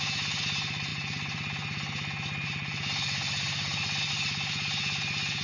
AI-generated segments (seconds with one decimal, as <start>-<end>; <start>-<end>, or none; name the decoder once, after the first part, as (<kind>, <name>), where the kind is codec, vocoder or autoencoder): none